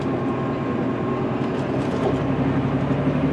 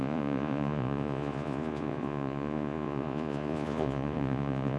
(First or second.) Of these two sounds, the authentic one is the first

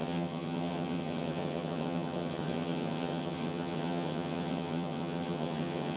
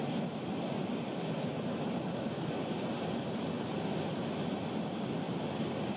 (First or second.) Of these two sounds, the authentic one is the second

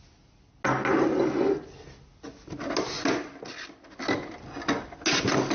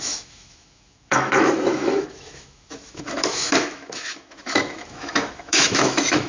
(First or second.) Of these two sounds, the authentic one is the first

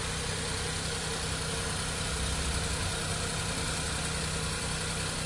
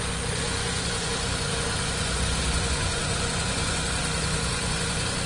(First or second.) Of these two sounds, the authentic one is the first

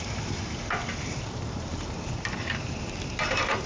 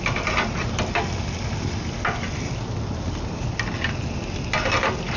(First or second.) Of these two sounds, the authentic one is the second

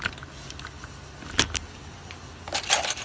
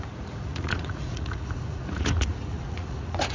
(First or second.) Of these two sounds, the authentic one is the first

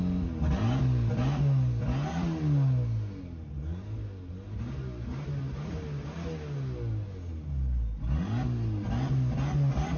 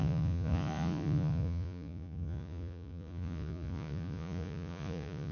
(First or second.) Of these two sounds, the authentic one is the first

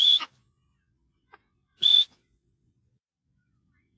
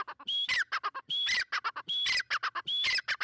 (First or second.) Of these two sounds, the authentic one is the second